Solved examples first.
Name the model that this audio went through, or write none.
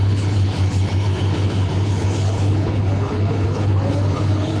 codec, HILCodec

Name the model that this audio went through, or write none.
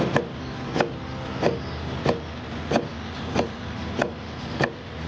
none